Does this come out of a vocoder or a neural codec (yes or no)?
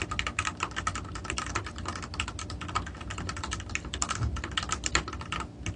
no